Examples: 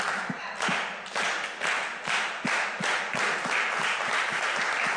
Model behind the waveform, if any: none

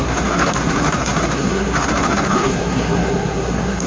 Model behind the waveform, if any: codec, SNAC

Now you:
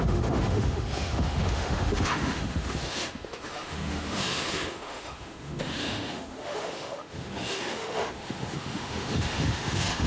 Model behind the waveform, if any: autoencoder, DAC-VAE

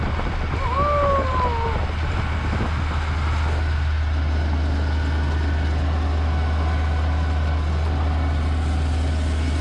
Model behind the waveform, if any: none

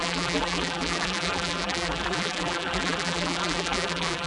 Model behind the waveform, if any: vocoder, BigVGAN v2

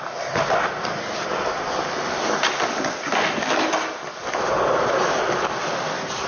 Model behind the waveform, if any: none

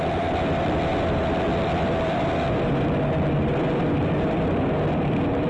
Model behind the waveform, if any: none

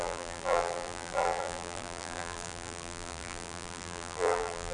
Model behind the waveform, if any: vocoder, BigVGAN v2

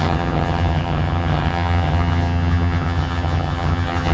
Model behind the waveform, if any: vocoder, HiFi-GAN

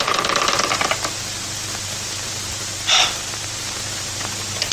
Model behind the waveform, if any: vocoder, BigVGAN v2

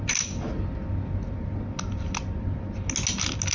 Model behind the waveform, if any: none